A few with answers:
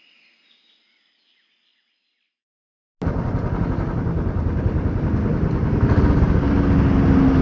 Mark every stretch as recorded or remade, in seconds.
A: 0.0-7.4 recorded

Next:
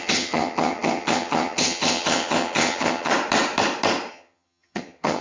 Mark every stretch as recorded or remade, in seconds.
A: 0.0-3.1 remade; 3.1-4.1 recorded; 4.1-5.2 remade

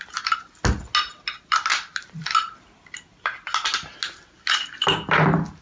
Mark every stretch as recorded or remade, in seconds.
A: 0.0-5.6 recorded

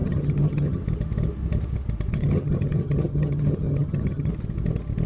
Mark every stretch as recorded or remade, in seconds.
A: 0.0-0.8 remade; 0.8-2.1 recorded; 2.1-4.3 remade; 4.3-5.1 recorded

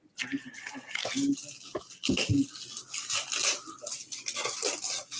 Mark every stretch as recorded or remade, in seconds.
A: 0.0-5.2 recorded

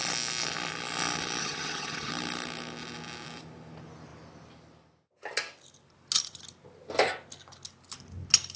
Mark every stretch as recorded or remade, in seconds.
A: 0.0-1.4 recorded; 1.4-2.1 remade; 2.1-8.6 recorded

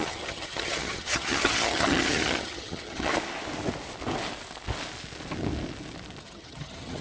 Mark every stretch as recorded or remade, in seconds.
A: 0.0-3.1 remade; 3.1-6.2 recorded; 6.2-7.0 remade